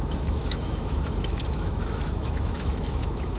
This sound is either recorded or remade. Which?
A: remade